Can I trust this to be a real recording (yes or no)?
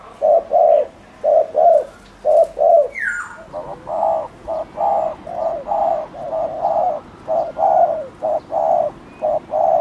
yes